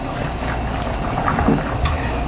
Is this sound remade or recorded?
recorded